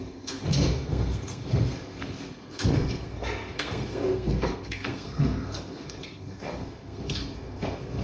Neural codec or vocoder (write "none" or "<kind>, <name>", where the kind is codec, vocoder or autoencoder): codec, SNAC